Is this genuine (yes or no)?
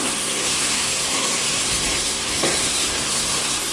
no